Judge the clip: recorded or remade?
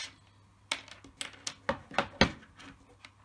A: recorded